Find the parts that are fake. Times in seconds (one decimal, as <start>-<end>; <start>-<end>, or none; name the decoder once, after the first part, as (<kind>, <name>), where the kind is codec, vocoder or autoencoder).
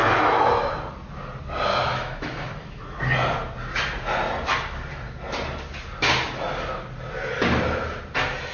0.0-0.7 (autoencoder, DAC-VAE); 1.7-3.0